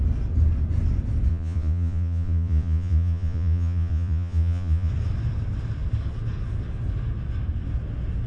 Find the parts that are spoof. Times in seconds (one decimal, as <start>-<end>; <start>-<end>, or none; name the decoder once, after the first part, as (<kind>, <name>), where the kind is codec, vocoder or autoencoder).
1.3-4.9 (vocoder, Vocos)

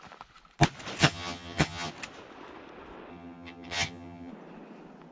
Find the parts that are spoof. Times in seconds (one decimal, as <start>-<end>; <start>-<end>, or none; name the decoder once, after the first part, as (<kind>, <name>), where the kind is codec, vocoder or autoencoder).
1.0-1.9 (vocoder, HiFi-GAN); 3.1-4.3

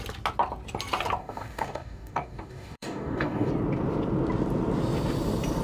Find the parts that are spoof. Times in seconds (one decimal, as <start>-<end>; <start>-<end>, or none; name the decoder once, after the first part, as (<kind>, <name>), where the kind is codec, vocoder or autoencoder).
1.2-3.5 (codec, DAC)

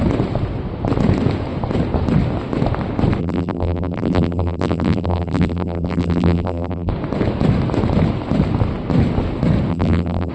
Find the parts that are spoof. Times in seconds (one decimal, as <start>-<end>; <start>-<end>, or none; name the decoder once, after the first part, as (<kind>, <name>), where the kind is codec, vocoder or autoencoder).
3.2-6.9 (vocoder, BigVGAN v2); 9.7-10.3

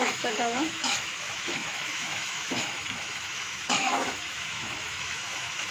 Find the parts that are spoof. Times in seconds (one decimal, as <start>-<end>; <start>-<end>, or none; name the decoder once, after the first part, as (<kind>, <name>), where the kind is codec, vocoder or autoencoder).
0.0-5.7 (autoencoder, DAC-VAE)

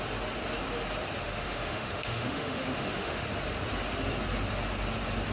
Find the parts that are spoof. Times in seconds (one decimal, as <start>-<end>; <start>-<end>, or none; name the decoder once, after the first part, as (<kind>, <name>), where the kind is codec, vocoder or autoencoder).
1.2-3.2 (autoencoder, DAC-VAE)